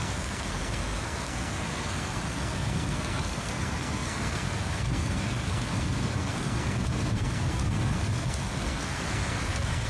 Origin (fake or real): fake